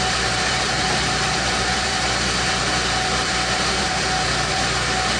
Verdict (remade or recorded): remade